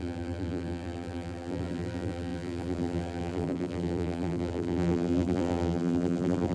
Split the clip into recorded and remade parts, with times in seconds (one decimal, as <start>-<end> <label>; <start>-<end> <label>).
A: 0.0-6.5 remade